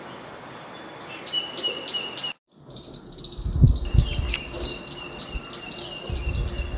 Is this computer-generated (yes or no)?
no